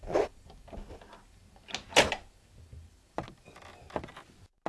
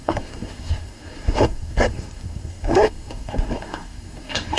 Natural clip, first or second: first